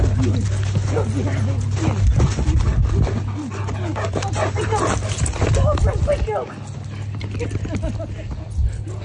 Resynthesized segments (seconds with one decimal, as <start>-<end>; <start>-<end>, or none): 3.9-5.5